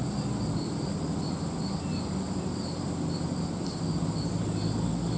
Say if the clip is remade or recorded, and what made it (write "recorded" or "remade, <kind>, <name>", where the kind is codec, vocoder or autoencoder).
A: recorded